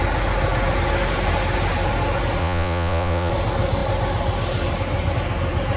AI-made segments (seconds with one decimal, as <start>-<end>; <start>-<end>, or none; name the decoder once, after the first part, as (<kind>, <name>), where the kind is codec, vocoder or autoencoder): 2.4-3.3 (vocoder, Vocos)